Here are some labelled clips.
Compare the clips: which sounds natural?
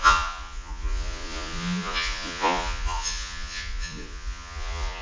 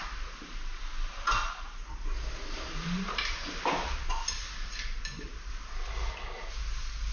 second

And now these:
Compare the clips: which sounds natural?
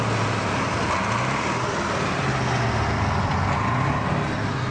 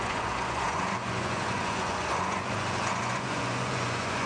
first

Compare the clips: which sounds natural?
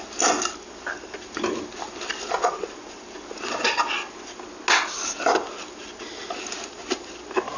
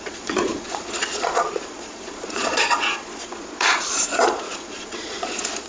first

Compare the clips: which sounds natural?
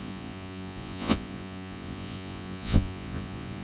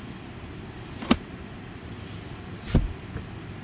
second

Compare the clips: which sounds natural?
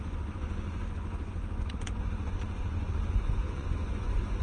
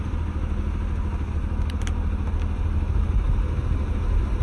second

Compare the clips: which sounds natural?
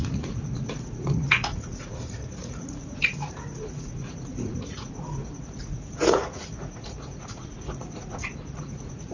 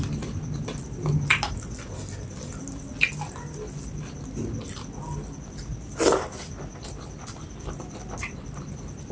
second